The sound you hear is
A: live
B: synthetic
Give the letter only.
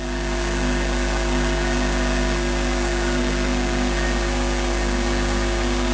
B